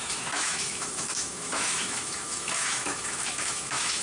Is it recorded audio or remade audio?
remade